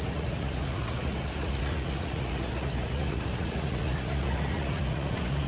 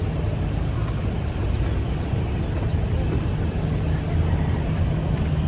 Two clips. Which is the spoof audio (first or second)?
first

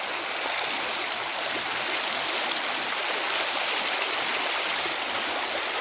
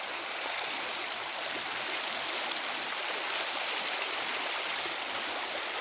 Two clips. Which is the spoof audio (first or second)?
second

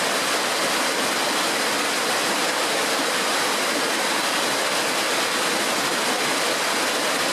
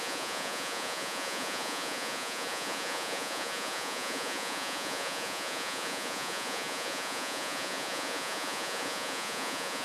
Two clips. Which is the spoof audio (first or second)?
second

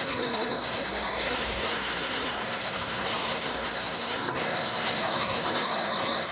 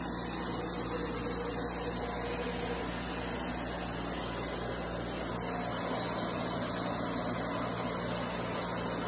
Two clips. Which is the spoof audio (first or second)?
first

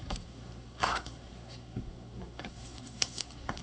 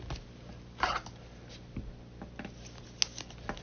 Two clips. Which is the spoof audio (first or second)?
first